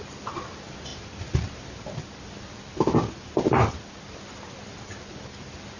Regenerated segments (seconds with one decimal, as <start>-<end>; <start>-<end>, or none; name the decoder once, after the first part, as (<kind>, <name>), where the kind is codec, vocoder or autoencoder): none